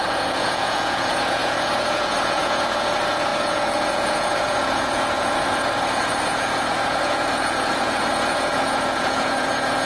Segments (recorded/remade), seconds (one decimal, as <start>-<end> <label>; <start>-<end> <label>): 0.0-9.8 remade